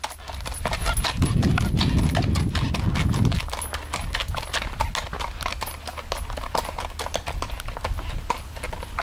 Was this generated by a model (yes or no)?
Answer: no